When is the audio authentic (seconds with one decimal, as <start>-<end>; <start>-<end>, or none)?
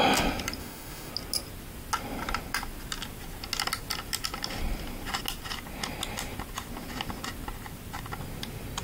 0.0-0.6; 1.1-8.8